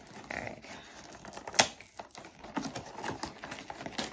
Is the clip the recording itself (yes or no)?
yes